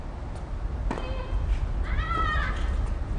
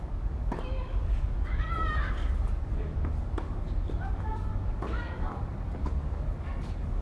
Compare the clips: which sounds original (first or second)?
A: first